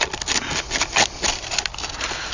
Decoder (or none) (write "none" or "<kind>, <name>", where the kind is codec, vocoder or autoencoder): none